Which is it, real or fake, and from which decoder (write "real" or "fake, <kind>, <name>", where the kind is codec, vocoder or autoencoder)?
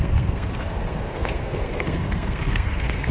fake, codec, SNAC